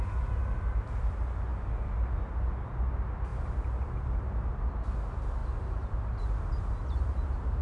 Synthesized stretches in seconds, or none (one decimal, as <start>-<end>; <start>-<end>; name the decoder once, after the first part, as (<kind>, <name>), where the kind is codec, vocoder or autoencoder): none